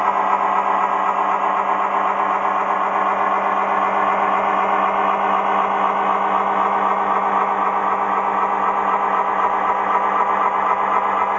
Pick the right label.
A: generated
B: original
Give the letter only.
B